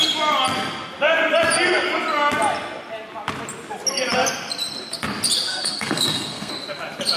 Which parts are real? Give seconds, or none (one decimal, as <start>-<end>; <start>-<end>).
0.0-5.5; 6.5-7.2